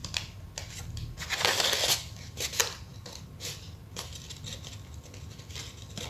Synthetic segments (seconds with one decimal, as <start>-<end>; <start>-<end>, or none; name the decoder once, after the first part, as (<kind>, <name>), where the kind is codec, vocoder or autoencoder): 0.0-2.2 (vocoder, BigVGAN v2); 2.6-4.0